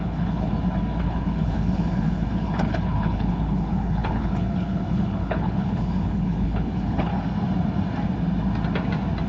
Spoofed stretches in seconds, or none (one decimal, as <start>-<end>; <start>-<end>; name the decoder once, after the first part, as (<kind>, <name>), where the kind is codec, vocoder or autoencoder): 0.0-0.5 (codec, HILCodec); 1.0-7.1